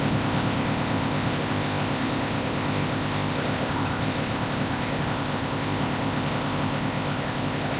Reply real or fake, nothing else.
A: fake